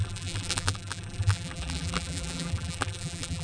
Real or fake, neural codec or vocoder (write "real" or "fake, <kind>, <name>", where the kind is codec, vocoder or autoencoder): fake, vocoder, BigVGAN v2